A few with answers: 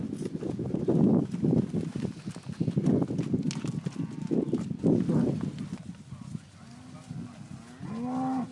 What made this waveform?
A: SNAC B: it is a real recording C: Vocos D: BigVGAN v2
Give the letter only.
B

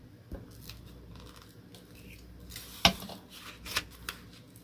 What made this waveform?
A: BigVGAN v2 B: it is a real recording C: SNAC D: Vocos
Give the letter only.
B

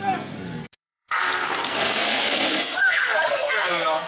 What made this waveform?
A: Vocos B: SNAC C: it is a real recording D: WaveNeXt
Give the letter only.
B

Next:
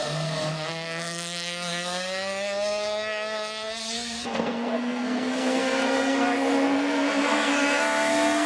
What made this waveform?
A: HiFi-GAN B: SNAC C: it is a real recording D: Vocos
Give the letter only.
B